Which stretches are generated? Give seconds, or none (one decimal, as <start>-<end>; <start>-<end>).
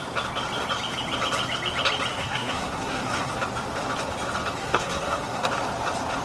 2.1-3.3; 4.6-5.5